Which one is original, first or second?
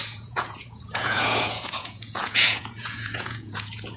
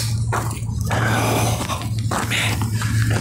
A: second